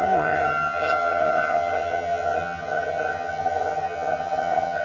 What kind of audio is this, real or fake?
fake